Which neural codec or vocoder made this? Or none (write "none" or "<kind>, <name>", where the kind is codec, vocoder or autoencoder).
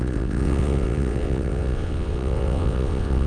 vocoder, WaveNeXt